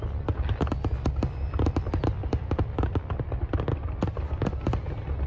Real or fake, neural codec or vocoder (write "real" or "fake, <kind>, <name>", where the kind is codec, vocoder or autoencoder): real